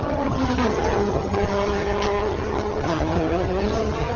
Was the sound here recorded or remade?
remade